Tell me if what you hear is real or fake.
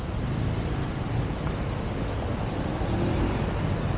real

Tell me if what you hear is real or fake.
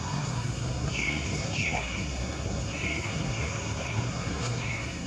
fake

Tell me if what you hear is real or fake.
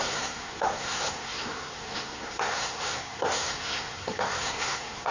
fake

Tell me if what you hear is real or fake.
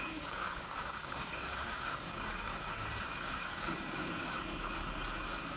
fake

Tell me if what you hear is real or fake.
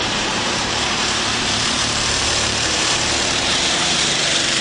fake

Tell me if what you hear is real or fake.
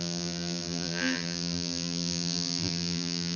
fake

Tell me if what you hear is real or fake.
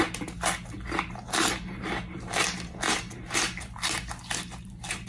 real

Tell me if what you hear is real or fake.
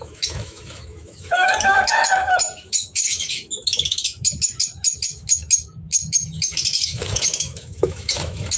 fake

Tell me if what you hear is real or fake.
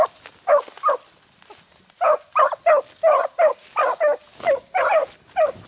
real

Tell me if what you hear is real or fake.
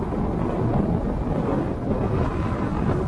real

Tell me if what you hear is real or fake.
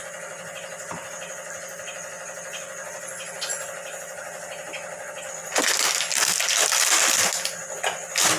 real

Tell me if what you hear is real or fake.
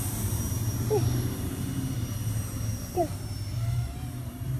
fake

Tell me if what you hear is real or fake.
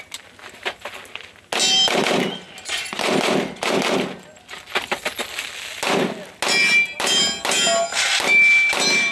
real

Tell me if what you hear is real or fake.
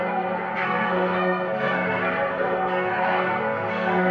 fake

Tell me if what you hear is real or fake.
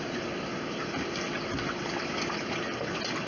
real